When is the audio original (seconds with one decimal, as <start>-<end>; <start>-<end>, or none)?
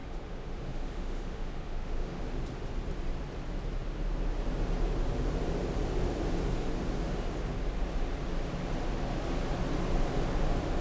2.2-10.8